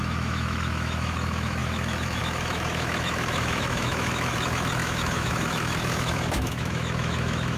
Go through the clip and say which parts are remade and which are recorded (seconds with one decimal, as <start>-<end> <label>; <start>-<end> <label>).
0.0-7.6 remade